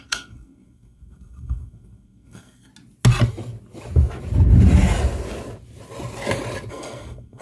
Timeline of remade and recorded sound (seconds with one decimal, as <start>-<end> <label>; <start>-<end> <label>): 0.0-2.7 remade; 2.7-6.7 recorded; 6.7-7.4 remade